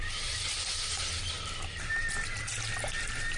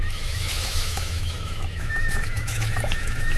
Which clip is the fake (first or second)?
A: second